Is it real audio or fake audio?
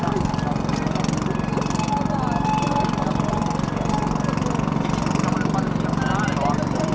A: real